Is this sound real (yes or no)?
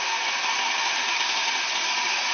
yes